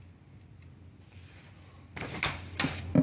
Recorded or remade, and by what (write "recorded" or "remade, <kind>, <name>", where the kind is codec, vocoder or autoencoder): recorded